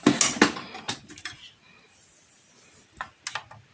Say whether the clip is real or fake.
real